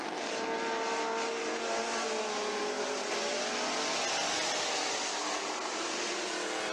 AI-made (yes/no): no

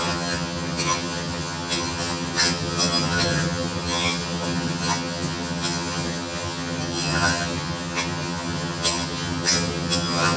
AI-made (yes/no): yes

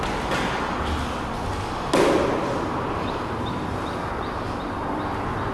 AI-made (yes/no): no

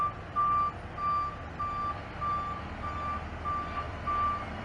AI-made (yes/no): no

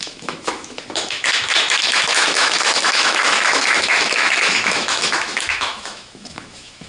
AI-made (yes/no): yes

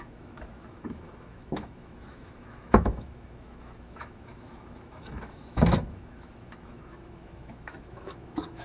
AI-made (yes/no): yes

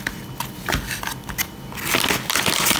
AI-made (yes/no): no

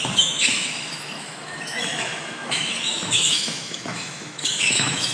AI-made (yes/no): yes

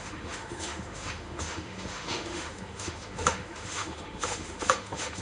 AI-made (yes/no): yes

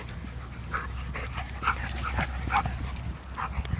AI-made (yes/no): no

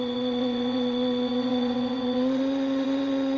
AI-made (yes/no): yes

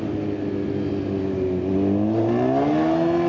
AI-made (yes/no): no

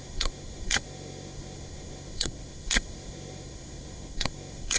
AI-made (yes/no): yes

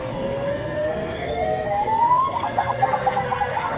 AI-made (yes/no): yes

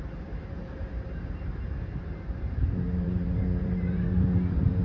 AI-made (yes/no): yes